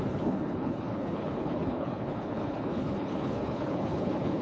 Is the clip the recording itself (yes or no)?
no